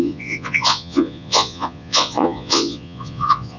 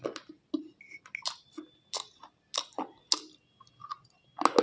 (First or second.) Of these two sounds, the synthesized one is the first